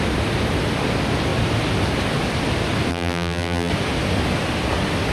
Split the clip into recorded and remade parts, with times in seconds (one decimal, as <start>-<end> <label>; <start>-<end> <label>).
0.0-2.9 recorded; 2.9-3.7 remade; 3.7-5.1 recorded